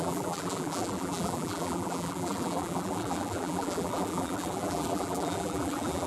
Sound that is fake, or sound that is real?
fake